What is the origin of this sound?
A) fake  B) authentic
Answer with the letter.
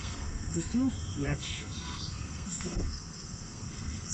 A